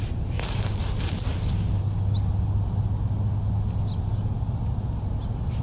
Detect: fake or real real